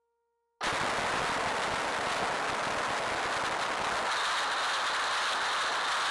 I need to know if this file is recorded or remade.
recorded